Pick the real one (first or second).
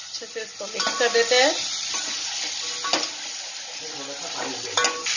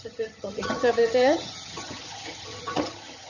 first